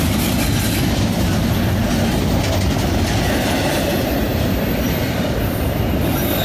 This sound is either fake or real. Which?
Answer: real